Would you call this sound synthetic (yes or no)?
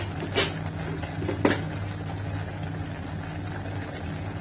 no